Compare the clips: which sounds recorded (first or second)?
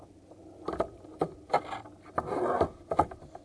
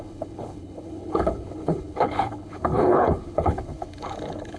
first